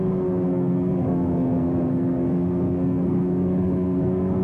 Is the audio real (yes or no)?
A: no